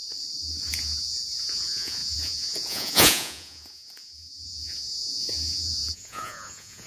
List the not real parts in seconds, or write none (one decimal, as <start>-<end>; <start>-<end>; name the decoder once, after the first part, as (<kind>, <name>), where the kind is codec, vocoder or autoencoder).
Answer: 0.7-6.9 (vocoder, Vocos)